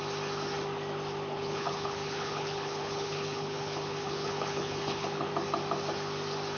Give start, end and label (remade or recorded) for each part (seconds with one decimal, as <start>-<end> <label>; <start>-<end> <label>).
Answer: 0.0-1.3 recorded; 1.3-5.3 remade; 5.3-6.6 recorded